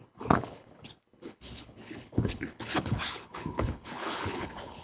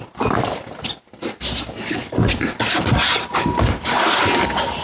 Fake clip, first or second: first